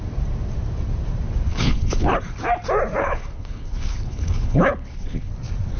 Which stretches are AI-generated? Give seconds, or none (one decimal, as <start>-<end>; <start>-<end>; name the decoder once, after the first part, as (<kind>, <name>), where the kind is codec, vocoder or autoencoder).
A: 1.5-2.2 (codec, HILCodec); 3.0-5.3